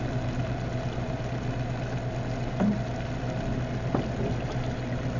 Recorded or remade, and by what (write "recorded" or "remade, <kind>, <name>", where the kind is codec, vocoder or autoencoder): recorded